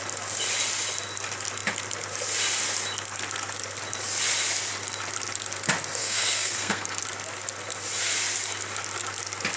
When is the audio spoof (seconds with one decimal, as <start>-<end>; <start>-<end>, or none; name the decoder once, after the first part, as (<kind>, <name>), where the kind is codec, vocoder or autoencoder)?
6.0-7.0 (codec, SNAC)